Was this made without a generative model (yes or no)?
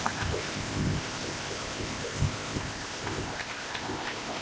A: no